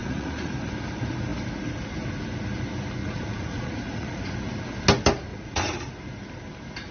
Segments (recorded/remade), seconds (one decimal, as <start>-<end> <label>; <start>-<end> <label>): 0.0-0.5 remade; 0.5-3.0 recorded; 3.0-4.2 remade; 4.2-5.3 recorded; 5.3-5.9 remade; 5.9-6.9 recorded